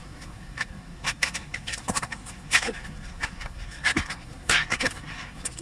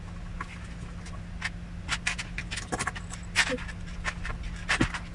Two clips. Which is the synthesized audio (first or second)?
first